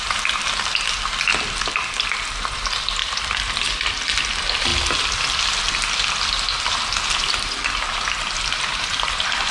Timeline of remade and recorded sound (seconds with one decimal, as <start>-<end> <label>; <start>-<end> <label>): 0.0-9.5 recorded